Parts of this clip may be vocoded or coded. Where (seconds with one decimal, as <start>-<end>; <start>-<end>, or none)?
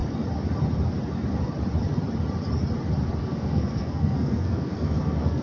3.2-5.4